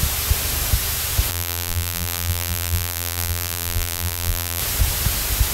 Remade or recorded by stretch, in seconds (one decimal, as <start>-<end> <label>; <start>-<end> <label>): 0.0-1.3 recorded; 1.3-4.6 remade; 4.6-5.5 recorded